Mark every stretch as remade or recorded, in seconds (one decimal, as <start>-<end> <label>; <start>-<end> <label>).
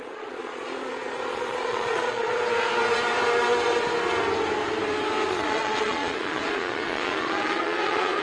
0.0-2.3 remade; 2.3-5.3 recorded; 5.3-8.2 remade